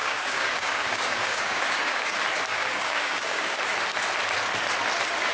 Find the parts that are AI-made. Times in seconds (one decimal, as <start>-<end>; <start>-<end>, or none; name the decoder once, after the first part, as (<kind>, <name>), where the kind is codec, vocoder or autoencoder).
0.0-2.1 (codec, DAC); 2.5-3.6